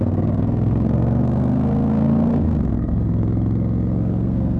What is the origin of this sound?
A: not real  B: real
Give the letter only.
A